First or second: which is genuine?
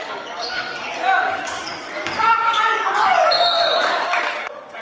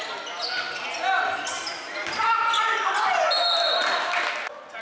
second